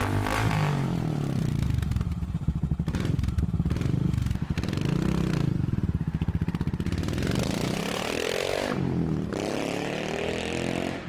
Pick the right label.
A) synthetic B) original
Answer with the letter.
B